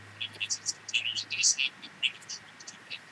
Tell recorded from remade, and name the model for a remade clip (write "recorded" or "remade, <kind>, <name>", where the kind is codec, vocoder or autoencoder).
recorded